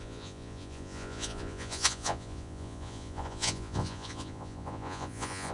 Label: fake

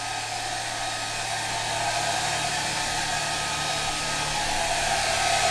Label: real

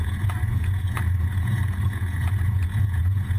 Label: fake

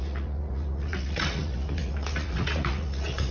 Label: fake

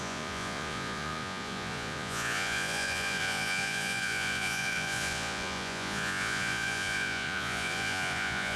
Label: fake